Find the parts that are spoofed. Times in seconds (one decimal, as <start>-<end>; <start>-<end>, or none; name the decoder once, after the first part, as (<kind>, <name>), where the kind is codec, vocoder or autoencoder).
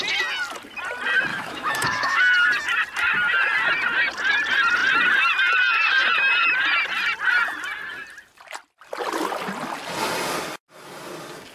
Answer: 1.3-2.2 (autoencoder, DAC-VAE)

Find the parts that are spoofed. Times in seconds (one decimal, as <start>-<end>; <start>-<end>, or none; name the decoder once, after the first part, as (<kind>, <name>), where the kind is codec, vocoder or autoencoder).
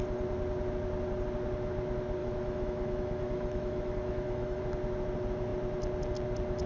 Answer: 2.2-4.6 (autoencoder, DAC-VAE)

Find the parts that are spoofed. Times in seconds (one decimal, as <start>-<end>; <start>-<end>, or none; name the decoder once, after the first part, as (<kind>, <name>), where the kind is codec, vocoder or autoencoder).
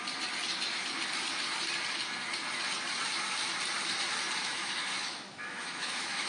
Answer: 4.4-6.3 (autoencoder, DAC-VAE)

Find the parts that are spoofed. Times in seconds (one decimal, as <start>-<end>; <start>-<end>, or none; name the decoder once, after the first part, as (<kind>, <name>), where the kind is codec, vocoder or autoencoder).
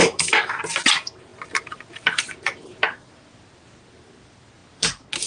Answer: 0.0-0.6 (autoencoder, DAC-VAE)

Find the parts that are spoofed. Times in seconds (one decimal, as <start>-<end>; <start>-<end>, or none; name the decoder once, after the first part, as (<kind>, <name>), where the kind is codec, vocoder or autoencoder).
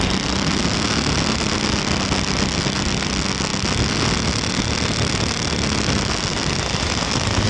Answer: none